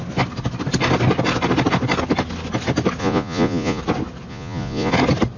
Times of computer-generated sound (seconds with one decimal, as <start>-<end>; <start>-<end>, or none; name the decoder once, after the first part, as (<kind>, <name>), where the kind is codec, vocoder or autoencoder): 3.0-3.8 (vocoder, Vocos); 4.3-4.9